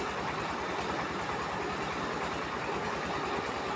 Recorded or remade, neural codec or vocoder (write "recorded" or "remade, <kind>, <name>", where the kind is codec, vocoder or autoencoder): recorded